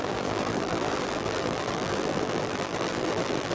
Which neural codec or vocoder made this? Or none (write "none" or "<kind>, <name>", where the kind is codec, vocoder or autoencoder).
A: vocoder, BigVGAN v2